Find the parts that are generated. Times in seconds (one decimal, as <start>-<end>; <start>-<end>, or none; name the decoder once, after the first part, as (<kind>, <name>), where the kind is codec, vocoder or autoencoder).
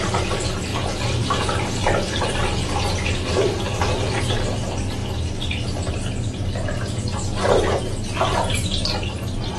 none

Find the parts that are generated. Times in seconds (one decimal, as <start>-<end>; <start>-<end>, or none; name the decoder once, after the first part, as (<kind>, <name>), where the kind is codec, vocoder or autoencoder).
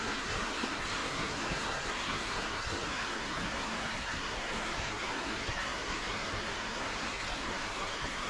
0.0-8.3 (codec, SNAC)